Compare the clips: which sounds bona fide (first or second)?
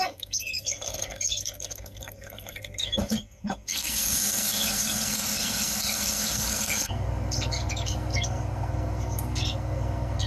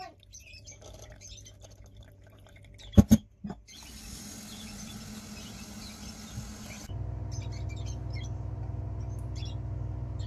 second